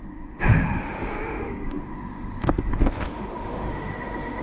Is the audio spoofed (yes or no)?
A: yes